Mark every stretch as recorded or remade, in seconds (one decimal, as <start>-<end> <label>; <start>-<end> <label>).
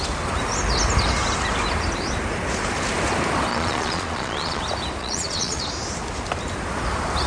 0.0-3.5 recorded; 3.5-4.6 remade; 4.6-5.0 recorded; 5.0-5.6 remade; 5.6-7.3 recorded